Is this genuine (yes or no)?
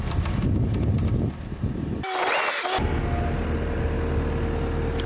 yes